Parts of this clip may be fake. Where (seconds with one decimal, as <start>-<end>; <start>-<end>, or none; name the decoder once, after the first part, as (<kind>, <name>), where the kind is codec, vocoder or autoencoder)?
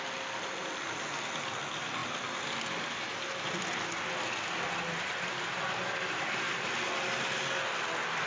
none